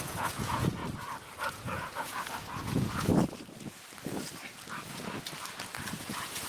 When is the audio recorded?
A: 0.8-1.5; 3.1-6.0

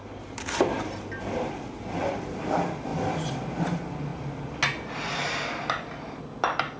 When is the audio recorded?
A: 0.0-6.8

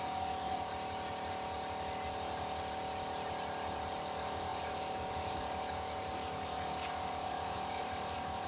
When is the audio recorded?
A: 0.7-4.0

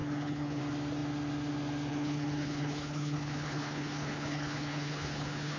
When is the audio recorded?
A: 0.6-1.9